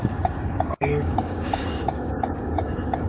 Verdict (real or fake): fake